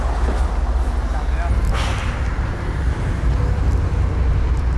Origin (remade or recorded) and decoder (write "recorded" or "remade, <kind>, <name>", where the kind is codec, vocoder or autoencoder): recorded